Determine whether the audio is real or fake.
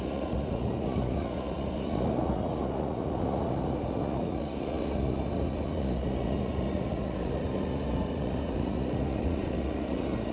fake